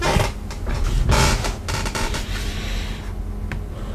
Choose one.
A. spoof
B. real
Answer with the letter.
B